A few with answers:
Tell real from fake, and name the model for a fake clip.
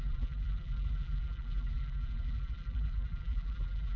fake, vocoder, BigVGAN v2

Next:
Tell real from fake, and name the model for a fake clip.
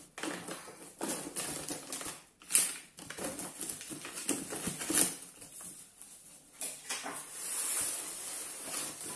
real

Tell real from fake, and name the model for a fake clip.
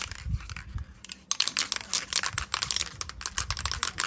real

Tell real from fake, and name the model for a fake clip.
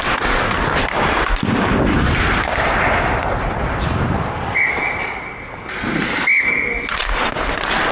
real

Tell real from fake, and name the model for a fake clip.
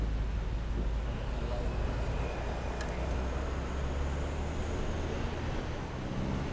real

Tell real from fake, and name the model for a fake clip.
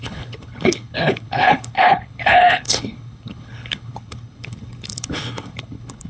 fake, codec, HILCodec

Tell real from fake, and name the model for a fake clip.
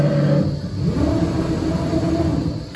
real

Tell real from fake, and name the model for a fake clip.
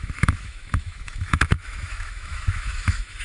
fake, autoencoder, DAC-VAE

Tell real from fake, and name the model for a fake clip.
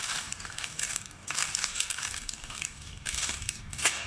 fake, codec, DAC